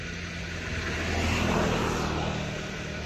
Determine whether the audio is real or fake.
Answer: real